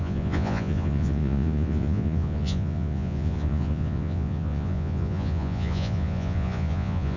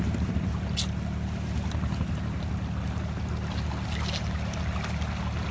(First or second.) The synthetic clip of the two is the first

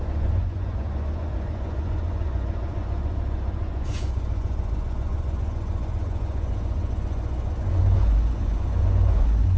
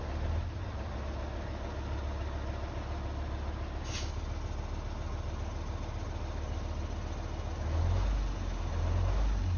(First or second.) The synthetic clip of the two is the first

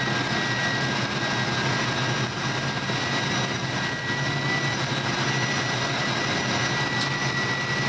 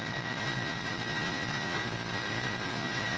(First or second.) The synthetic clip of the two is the second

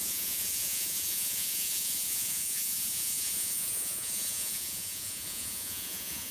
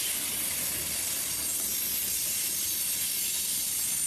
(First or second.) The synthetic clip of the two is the first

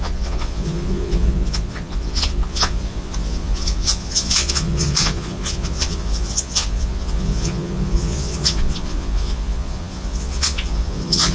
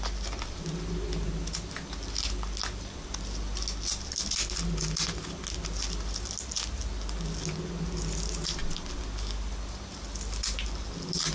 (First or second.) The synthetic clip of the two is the first